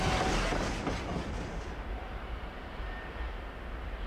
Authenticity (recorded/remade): remade